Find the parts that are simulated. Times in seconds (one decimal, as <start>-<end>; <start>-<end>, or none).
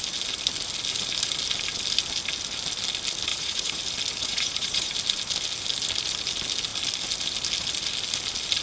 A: 3.3-3.8; 4.2-4.9